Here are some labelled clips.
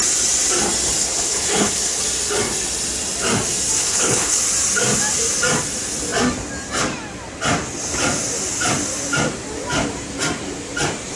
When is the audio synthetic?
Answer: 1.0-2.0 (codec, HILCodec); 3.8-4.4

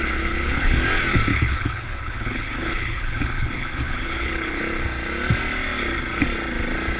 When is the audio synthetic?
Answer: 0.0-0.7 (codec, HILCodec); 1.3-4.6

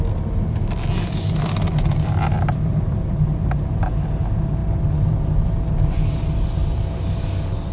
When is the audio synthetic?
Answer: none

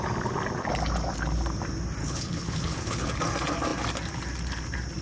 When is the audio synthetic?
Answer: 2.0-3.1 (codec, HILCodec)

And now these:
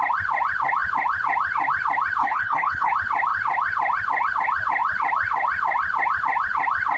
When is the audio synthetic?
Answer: 2.2-2.9 (codec, HILCodec)

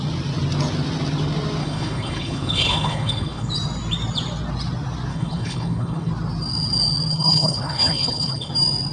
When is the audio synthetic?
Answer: 1.6-3.5 (codec, HILCodec); 5.1-6.1; 7.1-8.5